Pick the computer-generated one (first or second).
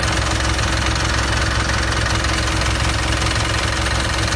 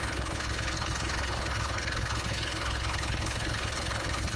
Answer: second